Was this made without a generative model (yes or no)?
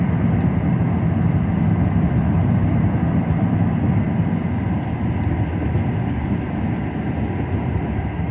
yes